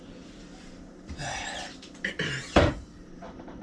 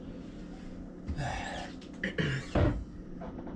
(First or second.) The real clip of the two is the second